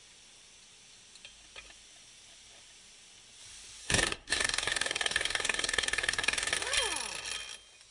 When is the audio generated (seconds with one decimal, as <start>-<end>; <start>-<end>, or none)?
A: 3.8-6.5

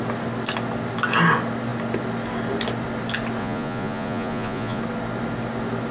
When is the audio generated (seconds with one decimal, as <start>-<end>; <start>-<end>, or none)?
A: 3.4-4.8

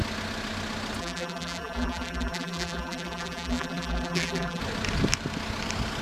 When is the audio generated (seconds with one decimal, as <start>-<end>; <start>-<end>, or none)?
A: 1.0-4.6

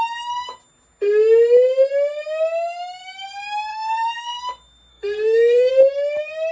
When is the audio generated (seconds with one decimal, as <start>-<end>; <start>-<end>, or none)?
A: 3.7-4.4; 4.9-5.7

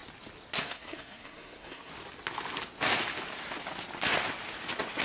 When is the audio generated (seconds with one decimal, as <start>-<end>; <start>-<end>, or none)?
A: 0.6-1.9

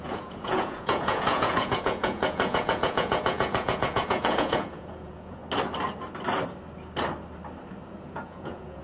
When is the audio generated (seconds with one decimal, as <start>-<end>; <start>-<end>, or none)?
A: 0.0-5.4; 8.0-8.8

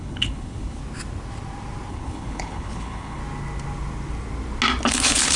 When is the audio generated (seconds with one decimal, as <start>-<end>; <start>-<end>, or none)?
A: 0.0-0.8; 1.9-3.2; 4.9-5.4